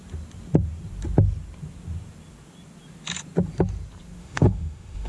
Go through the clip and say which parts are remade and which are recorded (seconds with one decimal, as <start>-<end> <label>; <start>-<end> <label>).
0.0-4.2 recorded; 4.2-5.1 remade